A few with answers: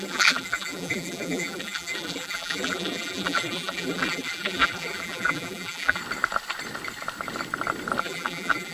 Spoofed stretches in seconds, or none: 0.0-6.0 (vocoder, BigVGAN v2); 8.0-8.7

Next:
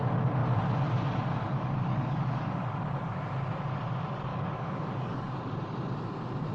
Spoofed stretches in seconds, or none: 1.4-3.3 (codec, DAC); 4.3-5.4

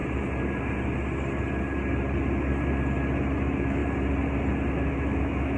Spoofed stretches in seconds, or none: 3.4-3.8 (autoencoder, DAC-VAE); 4.7-5.6

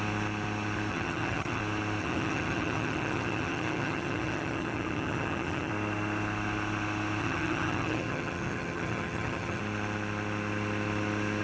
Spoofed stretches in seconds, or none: 0.9-1.6 (vocoder, HiFi-GAN); 2.0-5.7; 7.2-9.6

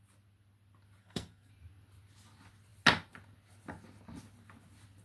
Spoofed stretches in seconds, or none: 1.0-1.5 (codec, SNAC)

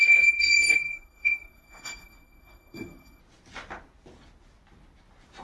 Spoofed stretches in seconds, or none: 0.0-3.2 (codec, SNAC)